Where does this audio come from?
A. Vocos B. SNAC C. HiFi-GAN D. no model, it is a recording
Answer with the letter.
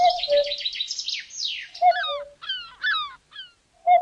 D